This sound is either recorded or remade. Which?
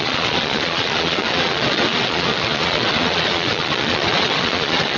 remade